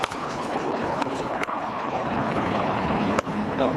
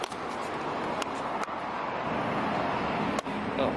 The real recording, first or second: second